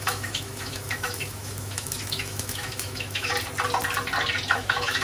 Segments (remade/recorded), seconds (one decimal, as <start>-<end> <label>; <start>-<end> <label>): 0.0-3.3 remade; 3.3-4.5 recorded; 4.5-5.0 remade